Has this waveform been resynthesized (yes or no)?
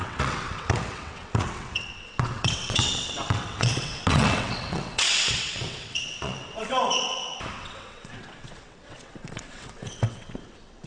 yes